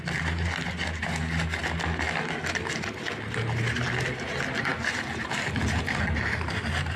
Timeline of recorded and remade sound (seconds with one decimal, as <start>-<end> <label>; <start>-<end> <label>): 0.0-7.0 recorded